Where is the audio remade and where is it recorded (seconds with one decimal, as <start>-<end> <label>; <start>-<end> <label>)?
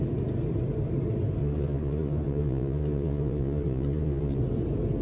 0.0-1.4 recorded; 1.4-4.4 remade; 4.4-5.0 recorded